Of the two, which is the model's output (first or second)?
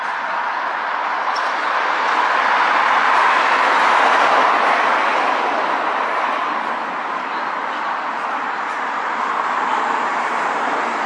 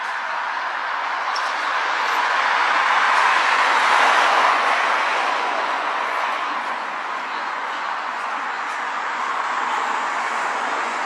second